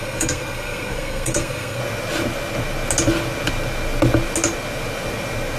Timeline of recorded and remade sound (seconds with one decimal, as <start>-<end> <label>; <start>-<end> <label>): 0.0-1.8 remade; 1.8-5.6 recorded